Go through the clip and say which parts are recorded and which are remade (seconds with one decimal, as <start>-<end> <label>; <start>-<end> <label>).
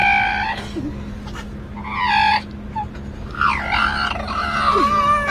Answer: 0.0-5.3 recorded